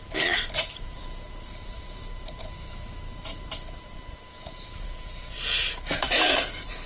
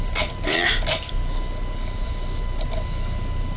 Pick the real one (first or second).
second